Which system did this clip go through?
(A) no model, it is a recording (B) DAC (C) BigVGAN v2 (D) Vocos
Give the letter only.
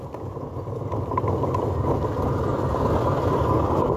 A